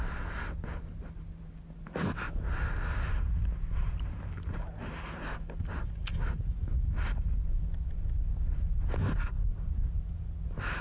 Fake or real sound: real